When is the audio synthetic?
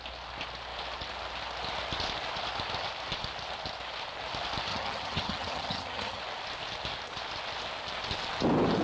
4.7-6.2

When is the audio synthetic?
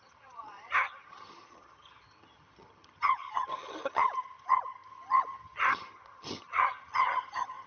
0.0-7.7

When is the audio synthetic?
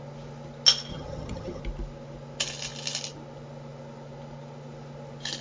0.9-1.6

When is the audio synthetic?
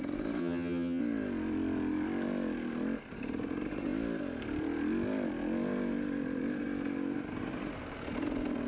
0.4-1.0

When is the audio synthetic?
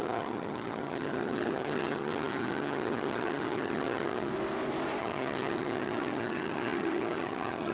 0.0-4.3; 5.0-7.7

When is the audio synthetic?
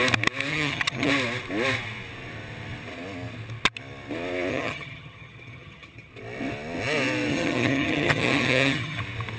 0.5-1.1; 4.5-6.1; 7.3-9.0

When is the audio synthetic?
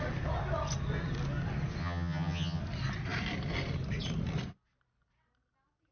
1.8-2.6